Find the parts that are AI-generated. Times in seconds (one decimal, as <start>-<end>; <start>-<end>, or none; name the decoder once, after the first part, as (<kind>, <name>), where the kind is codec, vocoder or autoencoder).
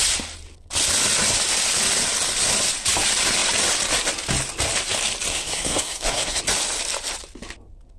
5.3-6.4 (codec, SNAC)